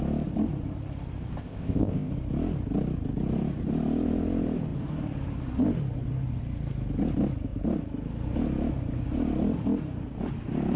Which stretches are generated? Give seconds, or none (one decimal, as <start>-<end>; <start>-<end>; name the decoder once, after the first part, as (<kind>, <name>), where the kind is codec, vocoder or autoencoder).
1.4-2.1 (codec, ZipCodec)

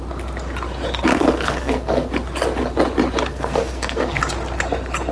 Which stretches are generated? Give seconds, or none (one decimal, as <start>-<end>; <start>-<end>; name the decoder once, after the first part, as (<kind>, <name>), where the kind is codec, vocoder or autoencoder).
1.1-2.1 (codec, SNAC); 3.3-4.2